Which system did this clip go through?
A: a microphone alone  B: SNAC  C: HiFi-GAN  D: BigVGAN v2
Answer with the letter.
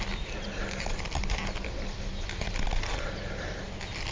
A